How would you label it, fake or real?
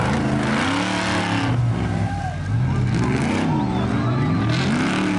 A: real